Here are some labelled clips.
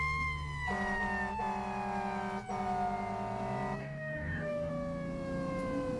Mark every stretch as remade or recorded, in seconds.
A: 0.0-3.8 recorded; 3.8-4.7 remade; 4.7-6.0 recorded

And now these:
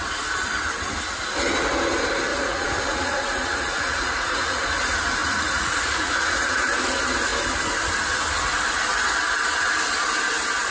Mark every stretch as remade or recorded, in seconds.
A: 0.0-2.3 recorded; 2.3-4.6 remade; 4.6-5.2 recorded; 5.2-6.8 remade; 6.8-10.7 recorded

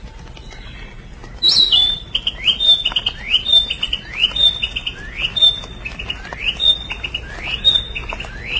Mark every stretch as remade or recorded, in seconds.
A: 0.0-8.6 recorded

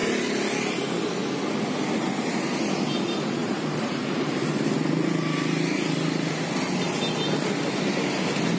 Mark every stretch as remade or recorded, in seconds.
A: 0.0-3.4 recorded; 3.4-4.4 remade; 4.4-8.6 recorded

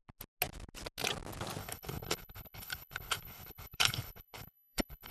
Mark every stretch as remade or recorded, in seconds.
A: 0.0-1.6 recorded; 1.6-5.1 remade